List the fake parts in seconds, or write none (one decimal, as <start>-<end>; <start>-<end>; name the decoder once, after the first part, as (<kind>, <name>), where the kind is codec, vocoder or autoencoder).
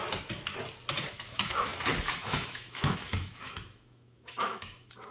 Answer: 1.1-5.1 (autoencoder, DAC-VAE)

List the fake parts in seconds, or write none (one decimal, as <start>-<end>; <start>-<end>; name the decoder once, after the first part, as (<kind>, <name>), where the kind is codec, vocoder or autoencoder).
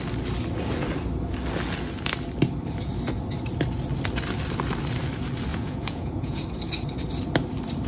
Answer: 5.5-6.4 (vocoder, Vocos)